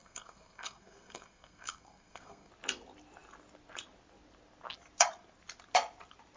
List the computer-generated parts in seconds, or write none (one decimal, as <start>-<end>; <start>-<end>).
0.0-2.5